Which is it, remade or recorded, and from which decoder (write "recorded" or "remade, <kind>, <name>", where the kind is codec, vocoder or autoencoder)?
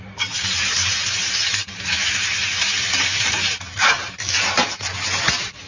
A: remade, vocoder, BigVGAN v2